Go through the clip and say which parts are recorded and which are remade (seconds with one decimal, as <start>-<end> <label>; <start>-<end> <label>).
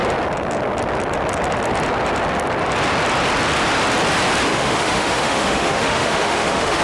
0.0-4.5 recorded; 4.5-6.8 remade